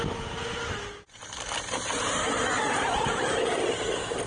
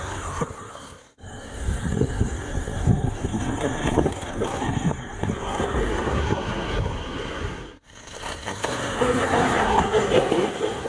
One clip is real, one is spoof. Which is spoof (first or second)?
second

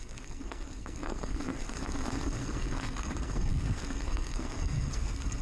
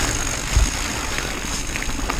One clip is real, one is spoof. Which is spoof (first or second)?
first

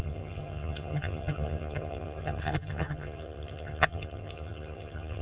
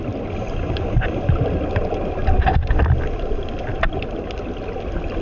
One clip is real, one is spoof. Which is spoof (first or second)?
first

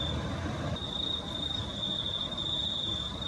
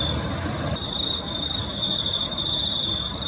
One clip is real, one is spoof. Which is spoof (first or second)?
second